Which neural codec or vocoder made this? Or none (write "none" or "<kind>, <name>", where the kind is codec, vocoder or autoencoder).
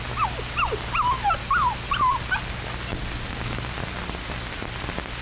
none